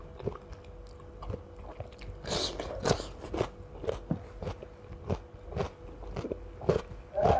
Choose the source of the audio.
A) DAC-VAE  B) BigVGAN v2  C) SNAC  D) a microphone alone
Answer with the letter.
D